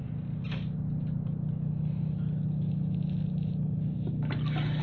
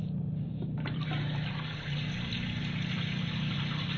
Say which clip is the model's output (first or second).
second